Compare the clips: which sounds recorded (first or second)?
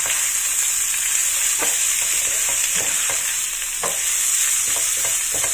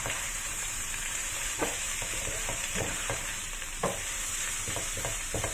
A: first